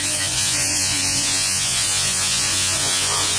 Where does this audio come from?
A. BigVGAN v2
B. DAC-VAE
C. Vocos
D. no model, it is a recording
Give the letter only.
C